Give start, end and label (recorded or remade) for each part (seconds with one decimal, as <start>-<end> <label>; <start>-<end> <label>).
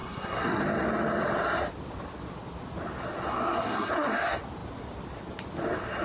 0.0-0.6 remade; 0.6-3.3 recorded; 3.3-3.9 remade; 3.9-6.0 recorded